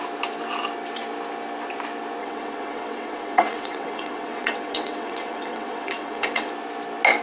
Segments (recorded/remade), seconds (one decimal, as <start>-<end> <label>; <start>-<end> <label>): 0.0-2.2 recorded; 2.2-6.5 remade; 6.5-7.2 recorded